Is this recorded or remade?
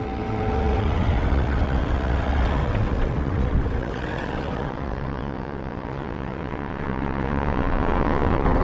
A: remade